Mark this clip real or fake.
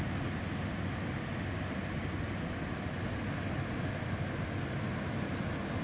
real